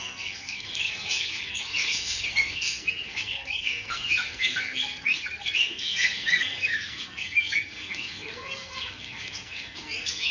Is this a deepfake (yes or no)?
yes